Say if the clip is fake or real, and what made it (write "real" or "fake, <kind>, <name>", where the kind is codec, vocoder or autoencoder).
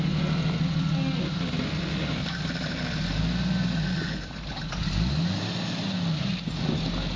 real